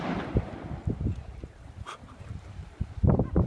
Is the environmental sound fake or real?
fake